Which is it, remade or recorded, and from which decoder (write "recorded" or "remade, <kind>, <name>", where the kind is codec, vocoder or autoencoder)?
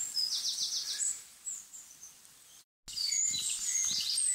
recorded